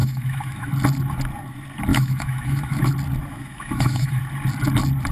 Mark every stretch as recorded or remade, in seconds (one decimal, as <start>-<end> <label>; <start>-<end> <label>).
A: 0.0-0.7 remade; 0.7-1.9 recorded; 1.9-2.9 remade; 2.9-3.3 recorded; 3.3-4.2 remade; 4.2-5.1 recorded